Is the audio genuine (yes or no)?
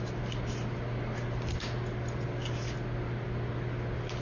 yes